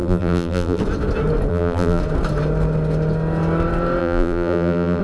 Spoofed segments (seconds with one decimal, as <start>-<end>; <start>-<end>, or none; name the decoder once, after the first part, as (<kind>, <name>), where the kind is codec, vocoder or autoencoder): 0.0-0.8 (vocoder, BigVGAN v2); 1.5-2.0; 4.0-5.0